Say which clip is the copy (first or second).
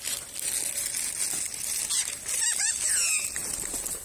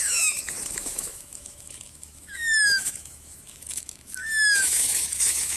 second